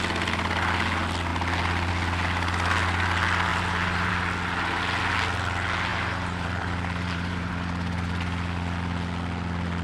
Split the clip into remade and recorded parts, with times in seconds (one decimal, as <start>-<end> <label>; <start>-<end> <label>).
0.0-3.5 recorded; 3.5-4.1 remade; 4.1-5.9 recorded; 5.9-7.5 remade; 7.5-9.8 recorded